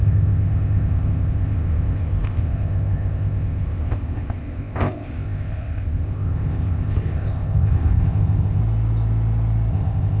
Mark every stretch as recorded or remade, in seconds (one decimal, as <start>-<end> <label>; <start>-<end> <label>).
0.0-8.6 remade; 8.6-9.7 recorded; 9.7-10.2 remade